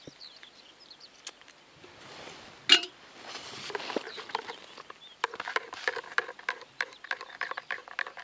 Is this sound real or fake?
real